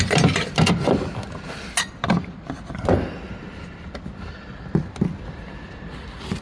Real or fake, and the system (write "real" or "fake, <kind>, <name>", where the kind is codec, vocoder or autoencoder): real